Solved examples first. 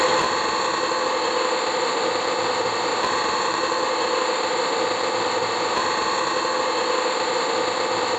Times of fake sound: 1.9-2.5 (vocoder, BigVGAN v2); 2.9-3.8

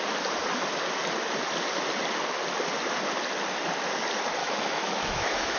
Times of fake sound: 4.4-5.6 (autoencoder, DAC-VAE)

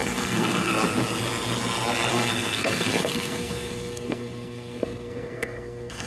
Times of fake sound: 0.0-0.7 (codec, SNAC); 2.1-6.1

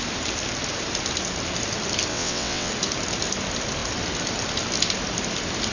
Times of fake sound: 2.1-2.7 (vocoder, WaveNeXt)

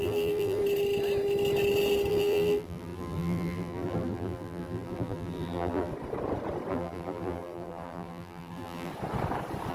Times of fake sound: 0.0-0.6 (vocoder, BigVGAN v2); 2.1-5.9; 6.7-8.9

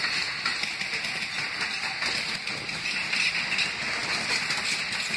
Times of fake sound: none

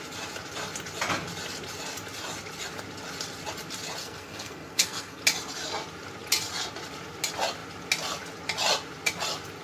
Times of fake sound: 4.0-5.2 (codec, SNAC)

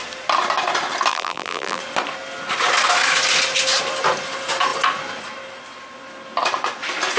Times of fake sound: 1.1-1.8 (vocoder, BigVGAN v2)